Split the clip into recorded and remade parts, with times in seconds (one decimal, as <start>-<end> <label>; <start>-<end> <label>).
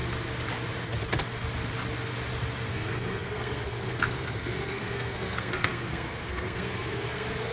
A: 0.0-2.7 recorded; 2.7-7.5 remade